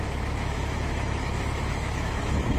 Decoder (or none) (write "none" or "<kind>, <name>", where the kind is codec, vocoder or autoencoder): autoencoder, DAC-VAE